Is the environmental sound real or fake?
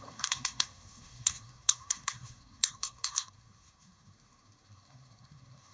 fake